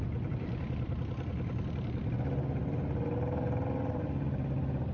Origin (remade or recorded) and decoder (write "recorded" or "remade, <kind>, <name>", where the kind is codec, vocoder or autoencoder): recorded